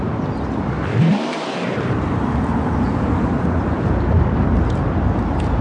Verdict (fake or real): real